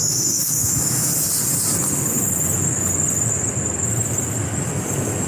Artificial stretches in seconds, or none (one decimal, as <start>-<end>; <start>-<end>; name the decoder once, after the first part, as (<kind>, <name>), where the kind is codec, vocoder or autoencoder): 0.0-1.1 (autoencoder, DAC-VAE)